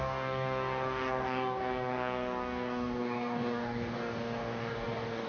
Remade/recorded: remade